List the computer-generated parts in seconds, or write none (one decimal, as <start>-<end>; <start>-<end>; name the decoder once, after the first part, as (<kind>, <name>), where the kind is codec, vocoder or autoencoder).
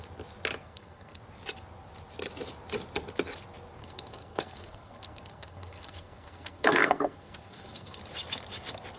0.6-1.2 (codec, SNAC); 3.8-8.0